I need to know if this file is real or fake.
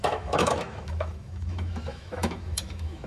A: fake